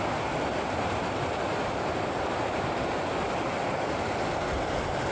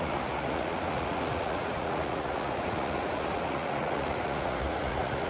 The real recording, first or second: first